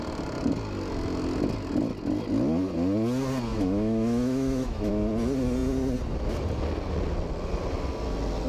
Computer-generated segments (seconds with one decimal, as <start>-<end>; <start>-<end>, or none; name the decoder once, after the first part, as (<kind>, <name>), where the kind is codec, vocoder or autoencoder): 3.5-4.9 (autoencoder, DAC-VAE)